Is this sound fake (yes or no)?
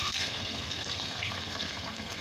yes